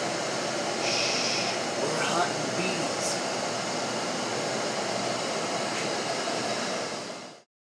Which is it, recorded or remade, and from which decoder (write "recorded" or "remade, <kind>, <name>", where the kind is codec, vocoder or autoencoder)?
remade, vocoder, BigVGAN v2